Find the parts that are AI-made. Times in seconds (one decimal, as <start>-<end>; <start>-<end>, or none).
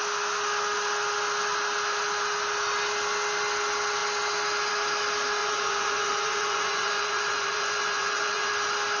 5.4-8.5